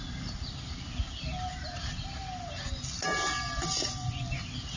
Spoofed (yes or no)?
no